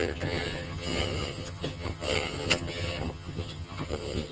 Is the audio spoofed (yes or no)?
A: yes